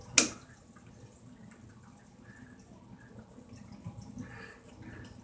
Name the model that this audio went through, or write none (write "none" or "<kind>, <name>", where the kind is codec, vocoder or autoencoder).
none